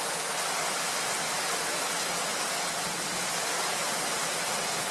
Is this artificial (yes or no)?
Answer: no